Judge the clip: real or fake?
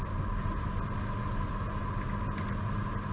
real